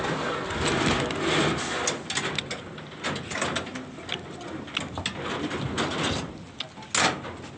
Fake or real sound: real